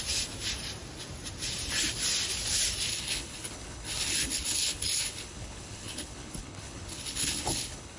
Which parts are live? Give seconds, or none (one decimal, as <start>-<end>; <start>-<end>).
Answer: 0.0-2.9